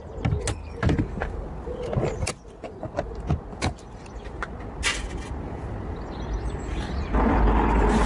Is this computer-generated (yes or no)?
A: no